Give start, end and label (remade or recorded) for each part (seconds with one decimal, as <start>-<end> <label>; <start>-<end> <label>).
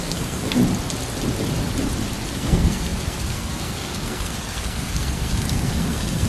0.0-0.6 remade; 0.6-2.3 recorded; 2.3-6.3 remade